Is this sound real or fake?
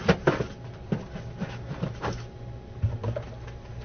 real